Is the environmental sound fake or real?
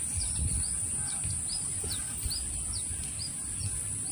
real